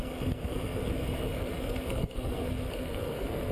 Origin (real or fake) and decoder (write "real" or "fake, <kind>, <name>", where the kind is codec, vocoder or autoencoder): fake, codec, SNAC